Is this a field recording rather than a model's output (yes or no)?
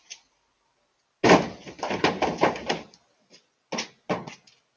yes